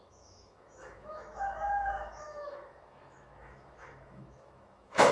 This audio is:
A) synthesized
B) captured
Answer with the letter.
A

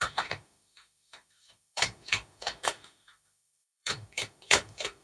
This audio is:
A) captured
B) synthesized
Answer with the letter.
B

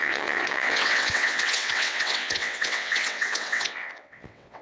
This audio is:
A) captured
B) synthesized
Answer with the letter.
B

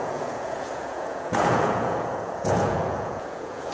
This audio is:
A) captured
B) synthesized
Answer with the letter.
B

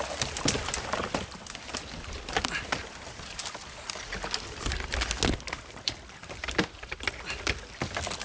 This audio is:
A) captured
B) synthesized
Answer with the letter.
A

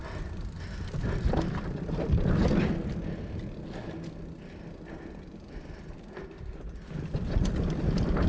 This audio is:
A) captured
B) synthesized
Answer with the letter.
A